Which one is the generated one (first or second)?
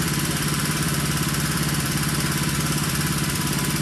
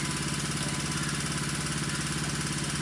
first